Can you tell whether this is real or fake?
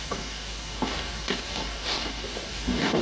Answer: fake